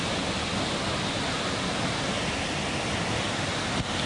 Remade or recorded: recorded